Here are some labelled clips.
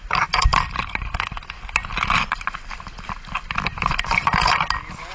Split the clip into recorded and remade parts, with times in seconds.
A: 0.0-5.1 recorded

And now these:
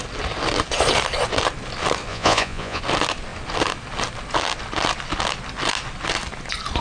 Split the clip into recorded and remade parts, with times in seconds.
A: 0.0-2.1 recorded; 2.1-2.8 remade; 2.8-6.8 recorded

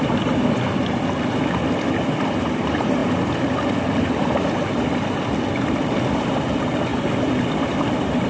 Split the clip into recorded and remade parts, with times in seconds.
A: 0.0-8.3 recorded

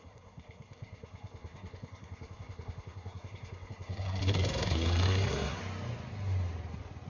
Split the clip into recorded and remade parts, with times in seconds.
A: 0.0-5.6 remade; 5.6-7.1 recorded

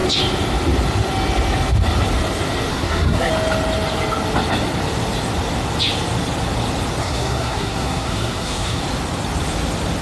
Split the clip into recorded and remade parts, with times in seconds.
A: 0.0-2.7 recorded; 2.7-3.3 remade; 3.3-7.0 recorded; 7.0-8.8 remade; 8.8-10.0 recorded

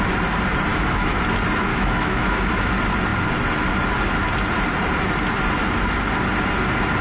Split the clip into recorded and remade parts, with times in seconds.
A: 0.0-0.7 recorded; 0.7-1.2 remade; 1.2-1.7 recorded; 1.7-2.7 remade; 2.7-7.0 recorded

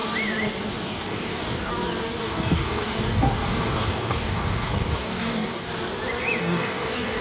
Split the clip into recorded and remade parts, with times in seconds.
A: 0.0-0.7 recorded; 0.7-1.7 remade; 1.7-2.2 recorded; 2.2-5.7 remade; 5.7-6.4 recorded; 6.4-7.2 remade